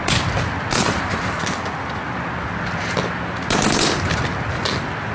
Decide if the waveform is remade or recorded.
recorded